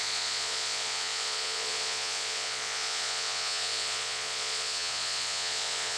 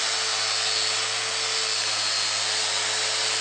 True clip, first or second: second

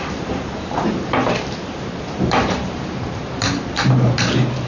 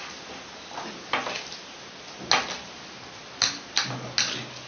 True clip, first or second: second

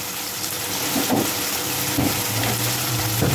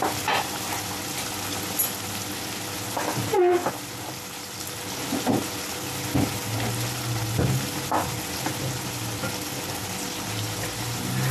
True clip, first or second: second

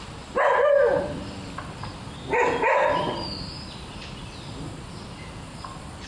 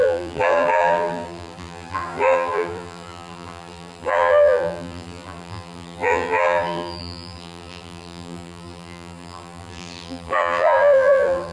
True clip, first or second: first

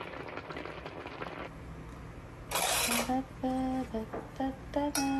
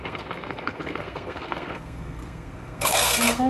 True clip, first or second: first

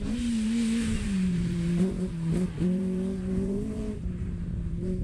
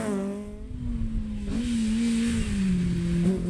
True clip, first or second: second